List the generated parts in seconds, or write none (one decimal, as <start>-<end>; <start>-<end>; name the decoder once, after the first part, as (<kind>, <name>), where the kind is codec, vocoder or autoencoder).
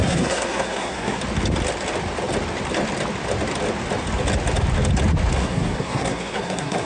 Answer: 0.0-1.2 (codec, SNAC); 5.4-6.9